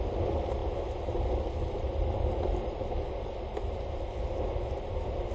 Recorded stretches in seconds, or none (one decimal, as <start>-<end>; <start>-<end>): 0.0-5.3